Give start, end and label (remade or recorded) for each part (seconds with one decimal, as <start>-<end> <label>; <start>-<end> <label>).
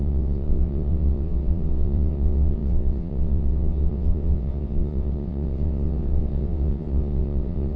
0.0-7.8 remade